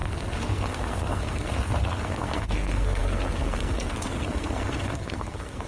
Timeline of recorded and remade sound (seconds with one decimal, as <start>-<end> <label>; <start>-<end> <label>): 0.0-5.7 remade